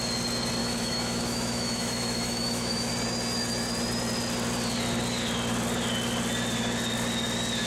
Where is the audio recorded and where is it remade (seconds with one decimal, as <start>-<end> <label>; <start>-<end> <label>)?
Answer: 0.0-0.6 recorded; 0.6-2.9 remade; 2.9-7.7 recorded

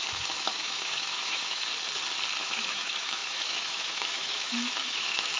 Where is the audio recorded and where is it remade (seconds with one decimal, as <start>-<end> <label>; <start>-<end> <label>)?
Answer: 0.0-1.7 remade; 1.7-2.4 recorded; 2.4-5.4 remade

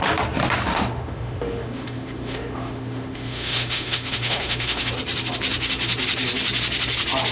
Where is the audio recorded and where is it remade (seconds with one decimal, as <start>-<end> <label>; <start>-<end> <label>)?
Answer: 0.0-0.7 recorded; 0.7-4.9 remade; 4.9-7.3 recorded

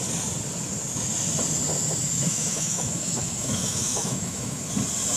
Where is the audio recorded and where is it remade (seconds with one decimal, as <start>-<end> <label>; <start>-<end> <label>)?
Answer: 0.0-2.1 recorded; 2.1-4.6 remade; 4.6-5.2 recorded